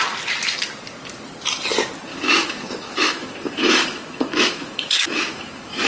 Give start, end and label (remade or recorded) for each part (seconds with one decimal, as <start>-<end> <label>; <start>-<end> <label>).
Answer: 0.0-2.1 recorded; 2.1-5.9 remade

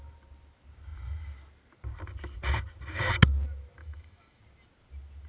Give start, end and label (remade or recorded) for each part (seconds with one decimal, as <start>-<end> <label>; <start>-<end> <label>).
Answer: 0.0-3.8 recorded; 3.8-4.4 remade; 4.4-5.3 recorded

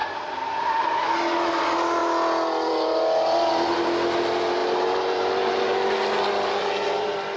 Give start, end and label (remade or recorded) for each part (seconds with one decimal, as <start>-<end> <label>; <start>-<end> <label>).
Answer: 0.0-7.4 recorded

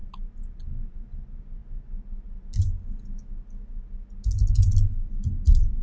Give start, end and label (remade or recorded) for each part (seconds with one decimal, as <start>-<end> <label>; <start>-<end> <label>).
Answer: 0.0-5.8 recorded

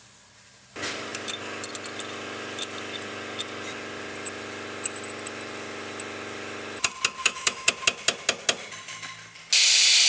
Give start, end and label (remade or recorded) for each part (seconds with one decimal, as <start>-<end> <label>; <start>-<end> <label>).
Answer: 0.0-7.2 recorded; 7.2-7.7 remade; 7.7-10.1 recorded

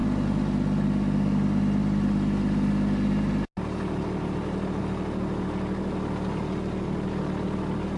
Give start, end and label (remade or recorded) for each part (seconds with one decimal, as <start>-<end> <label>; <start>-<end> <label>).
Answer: 0.0-8.0 recorded

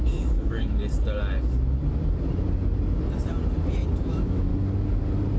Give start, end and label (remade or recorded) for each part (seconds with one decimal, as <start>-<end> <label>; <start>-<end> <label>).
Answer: 0.0-0.8 remade; 0.8-4.0 recorded; 4.0-4.5 remade; 4.5-5.4 recorded

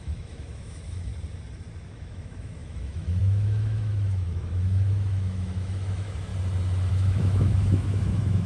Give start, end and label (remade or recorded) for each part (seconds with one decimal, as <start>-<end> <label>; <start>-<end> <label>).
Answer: 0.0-1.1 remade; 1.1-1.8 recorded; 1.8-6.3 remade; 6.3-6.9 recorded; 6.9-8.5 remade